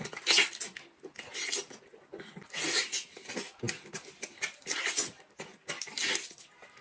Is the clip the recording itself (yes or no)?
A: yes